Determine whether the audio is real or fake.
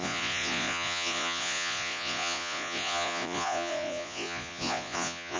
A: fake